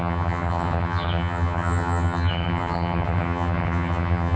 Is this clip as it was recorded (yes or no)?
no